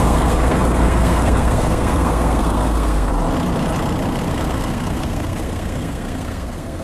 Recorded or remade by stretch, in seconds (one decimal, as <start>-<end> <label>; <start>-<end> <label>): 0.0-3.1 remade; 3.1-4.2 recorded; 4.2-6.8 remade